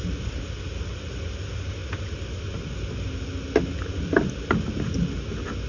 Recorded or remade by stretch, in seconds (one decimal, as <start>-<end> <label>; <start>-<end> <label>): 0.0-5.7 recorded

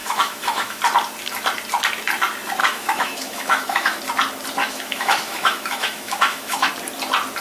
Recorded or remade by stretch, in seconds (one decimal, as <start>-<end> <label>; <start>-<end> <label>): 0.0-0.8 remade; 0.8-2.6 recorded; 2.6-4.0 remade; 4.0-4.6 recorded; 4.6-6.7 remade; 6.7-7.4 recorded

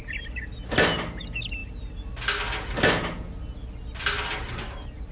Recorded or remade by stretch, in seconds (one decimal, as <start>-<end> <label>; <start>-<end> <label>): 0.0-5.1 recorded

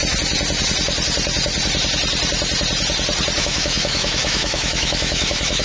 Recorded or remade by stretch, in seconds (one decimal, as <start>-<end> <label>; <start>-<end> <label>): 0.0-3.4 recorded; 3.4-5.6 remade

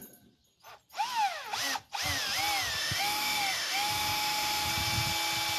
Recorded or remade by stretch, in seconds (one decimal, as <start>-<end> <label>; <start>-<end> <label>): 0.0-2.8 recorded; 2.8-4.7 remade; 4.7-5.6 recorded

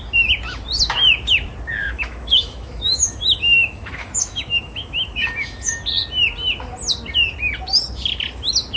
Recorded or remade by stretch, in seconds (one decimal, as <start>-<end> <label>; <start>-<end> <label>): 0.0-1.8 recorded; 1.8-5.7 remade; 5.7-8.8 recorded

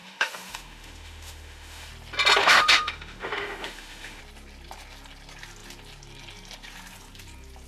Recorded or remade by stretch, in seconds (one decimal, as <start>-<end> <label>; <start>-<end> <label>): 0.0-1.9 remade; 1.9-2.4 recorded; 2.4-4.2 remade; 4.2-7.7 recorded